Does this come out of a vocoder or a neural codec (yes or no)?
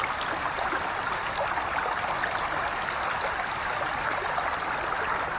no